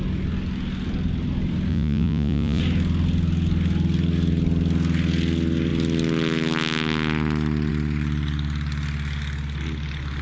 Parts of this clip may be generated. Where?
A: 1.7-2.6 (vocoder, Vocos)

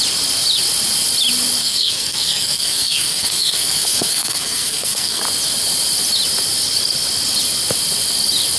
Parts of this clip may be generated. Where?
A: 1.6-5.2 (codec, SNAC)

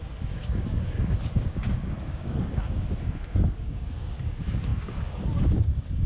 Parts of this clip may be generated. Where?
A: 0.0-6.1 (codec, DAC)

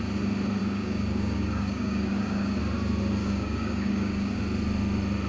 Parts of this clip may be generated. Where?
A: 0.6-2.6 (codec, DAC); 3.2-4.4

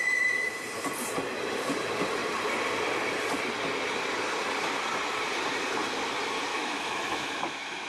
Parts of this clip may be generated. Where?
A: 6.5-7.9 (autoencoder, DAC-VAE)

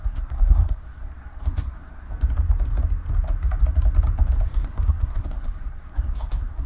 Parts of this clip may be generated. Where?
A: 0.0-2.1 (codec, SNAC); 4.6-6.7

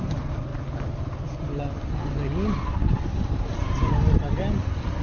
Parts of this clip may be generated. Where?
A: none

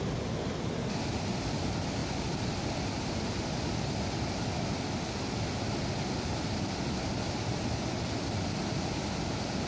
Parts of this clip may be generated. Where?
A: none